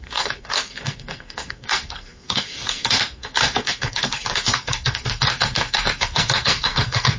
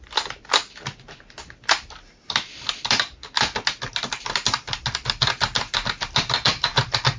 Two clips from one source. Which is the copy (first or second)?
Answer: first